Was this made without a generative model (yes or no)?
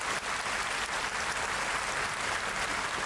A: yes